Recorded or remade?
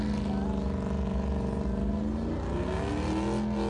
recorded